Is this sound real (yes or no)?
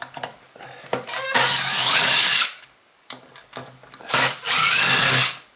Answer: no